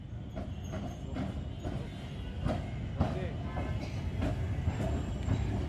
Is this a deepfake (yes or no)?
no